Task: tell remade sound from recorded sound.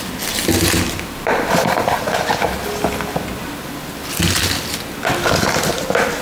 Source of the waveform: recorded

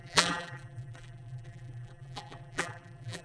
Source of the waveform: remade